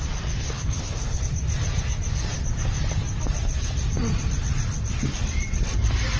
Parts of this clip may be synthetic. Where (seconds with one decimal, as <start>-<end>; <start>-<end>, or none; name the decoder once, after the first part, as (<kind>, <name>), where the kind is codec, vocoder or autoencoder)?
0.4-1.2 (codec, HILCodec)